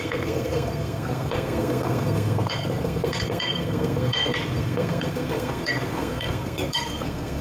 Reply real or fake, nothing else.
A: fake